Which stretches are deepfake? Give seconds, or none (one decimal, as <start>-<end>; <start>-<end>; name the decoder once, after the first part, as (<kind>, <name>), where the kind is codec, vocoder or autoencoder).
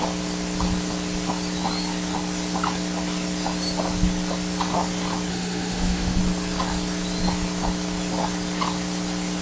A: 5.3-6.2 (autoencoder, DAC-VAE)